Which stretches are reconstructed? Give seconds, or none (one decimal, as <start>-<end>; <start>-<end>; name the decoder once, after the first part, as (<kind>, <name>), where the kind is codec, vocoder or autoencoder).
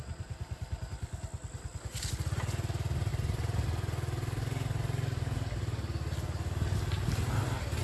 none